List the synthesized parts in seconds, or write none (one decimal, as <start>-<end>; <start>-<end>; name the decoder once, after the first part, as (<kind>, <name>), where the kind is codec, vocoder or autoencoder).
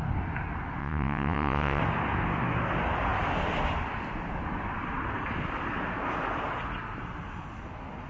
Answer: 0.8-1.8 (vocoder, WaveNeXt)